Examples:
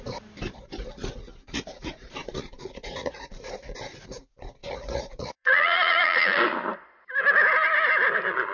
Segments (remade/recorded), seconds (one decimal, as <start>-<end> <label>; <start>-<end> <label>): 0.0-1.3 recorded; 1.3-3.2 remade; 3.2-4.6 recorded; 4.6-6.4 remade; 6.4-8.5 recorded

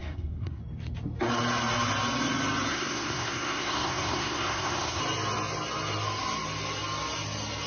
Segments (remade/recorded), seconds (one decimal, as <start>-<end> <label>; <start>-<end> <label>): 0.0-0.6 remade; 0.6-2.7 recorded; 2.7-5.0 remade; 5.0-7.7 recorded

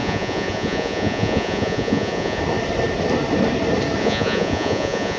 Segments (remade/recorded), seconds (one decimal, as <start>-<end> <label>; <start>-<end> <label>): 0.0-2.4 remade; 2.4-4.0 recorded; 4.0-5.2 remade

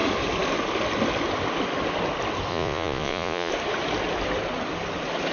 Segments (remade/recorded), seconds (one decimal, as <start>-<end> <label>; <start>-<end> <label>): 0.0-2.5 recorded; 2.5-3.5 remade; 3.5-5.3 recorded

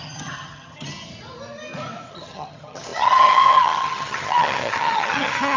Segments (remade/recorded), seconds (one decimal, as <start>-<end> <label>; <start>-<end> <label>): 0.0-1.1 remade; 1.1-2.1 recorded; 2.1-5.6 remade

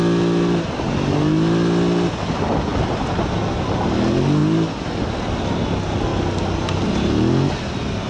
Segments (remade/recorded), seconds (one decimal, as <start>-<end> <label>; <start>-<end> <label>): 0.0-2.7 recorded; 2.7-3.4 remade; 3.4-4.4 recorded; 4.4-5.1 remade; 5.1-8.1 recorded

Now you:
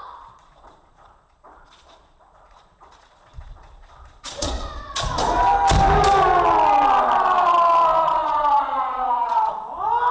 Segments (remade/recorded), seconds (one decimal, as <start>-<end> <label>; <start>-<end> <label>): 0.0-5.1 remade; 5.1-8.0 recorded; 8.0-9.5 remade; 9.5-10.1 recorded

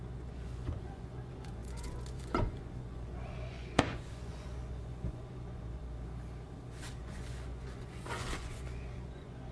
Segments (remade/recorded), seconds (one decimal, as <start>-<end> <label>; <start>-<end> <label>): 0.0-5.8 remade; 5.8-7.0 recorded; 7.0-9.5 remade